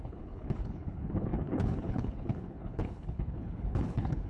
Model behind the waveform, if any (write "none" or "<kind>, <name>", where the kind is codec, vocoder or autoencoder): codec, HILCodec